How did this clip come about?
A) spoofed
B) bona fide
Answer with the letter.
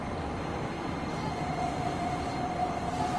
B